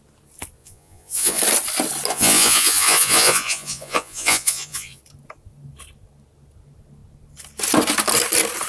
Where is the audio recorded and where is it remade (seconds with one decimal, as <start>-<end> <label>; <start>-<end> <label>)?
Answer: 0.0-0.6 recorded; 0.6-1.4 remade; 1.4-2.1 recorded; 2.1-5.0 remade; 5.0-8.7 recorded